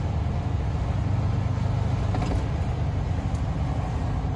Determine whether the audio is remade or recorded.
recorded